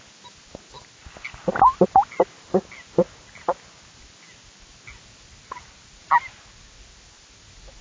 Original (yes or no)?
yes